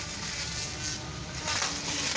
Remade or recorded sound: recorded